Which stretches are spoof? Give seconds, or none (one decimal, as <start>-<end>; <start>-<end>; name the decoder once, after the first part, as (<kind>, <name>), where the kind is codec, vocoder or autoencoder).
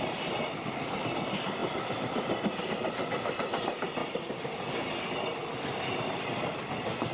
none